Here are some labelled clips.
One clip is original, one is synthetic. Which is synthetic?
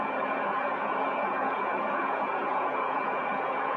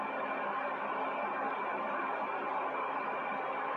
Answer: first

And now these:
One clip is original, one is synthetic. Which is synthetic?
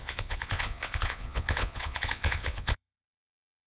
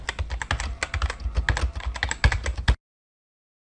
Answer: first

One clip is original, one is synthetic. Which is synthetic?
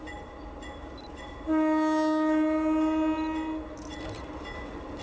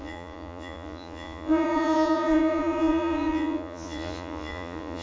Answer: second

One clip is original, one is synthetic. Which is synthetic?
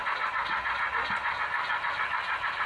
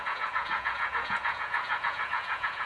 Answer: second